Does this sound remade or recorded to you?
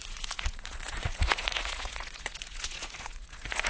remade